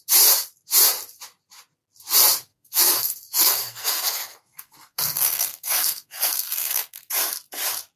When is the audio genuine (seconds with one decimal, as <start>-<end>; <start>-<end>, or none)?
0.0-2.5; 7.1-8.0